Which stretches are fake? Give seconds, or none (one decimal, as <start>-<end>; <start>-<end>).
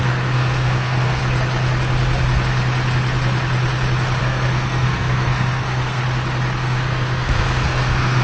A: 0.0-1.2; 4.2-6.0; 6.6-8.2